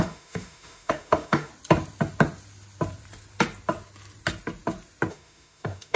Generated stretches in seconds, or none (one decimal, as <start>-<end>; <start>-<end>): 0.0-1.5; 5.1-6.0